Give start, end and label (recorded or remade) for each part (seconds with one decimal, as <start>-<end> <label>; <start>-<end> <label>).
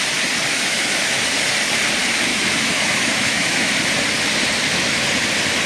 0.0-0.5 recorded; 0.5-1.3 remade; 1.3-2.3 recorded; 2.3-3.7 remade; 3.7-5.7 recorded